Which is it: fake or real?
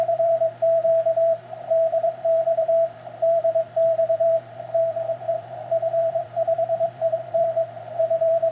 fake